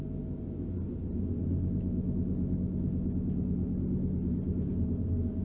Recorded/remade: recorded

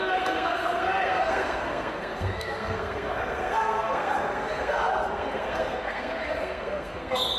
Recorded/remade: remade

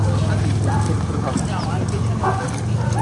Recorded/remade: recorded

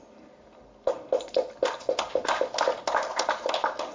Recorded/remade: recorded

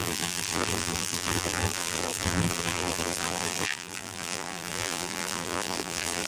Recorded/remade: remade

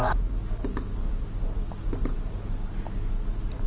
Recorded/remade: recorded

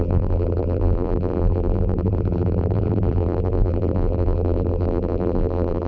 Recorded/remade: remade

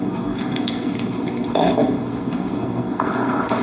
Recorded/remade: remade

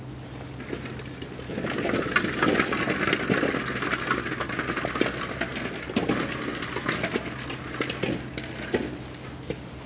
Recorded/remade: recorded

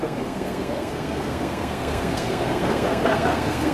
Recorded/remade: remade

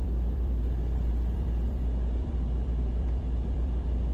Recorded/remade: remade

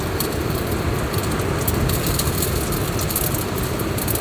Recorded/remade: remade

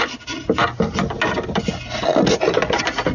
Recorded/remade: recorded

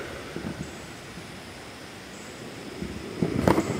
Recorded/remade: recorded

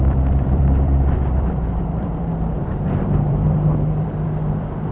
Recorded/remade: remade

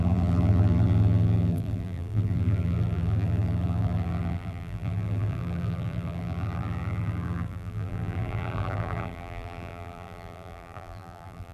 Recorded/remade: remade